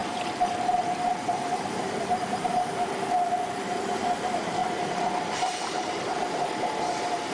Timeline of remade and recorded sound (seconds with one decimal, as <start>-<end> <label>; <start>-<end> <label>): 0.0-7.3 remade